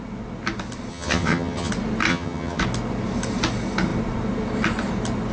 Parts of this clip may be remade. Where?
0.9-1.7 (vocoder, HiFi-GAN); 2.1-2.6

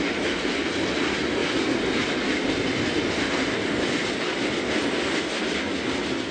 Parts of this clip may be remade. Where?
none